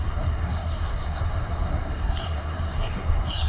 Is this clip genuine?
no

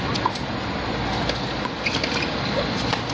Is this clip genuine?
yes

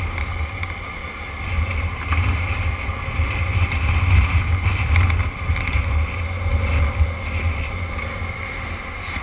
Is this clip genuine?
yes